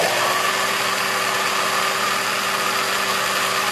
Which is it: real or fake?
real